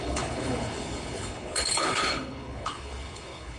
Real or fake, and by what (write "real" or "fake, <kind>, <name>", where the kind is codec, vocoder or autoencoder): fake, codec, HILCodec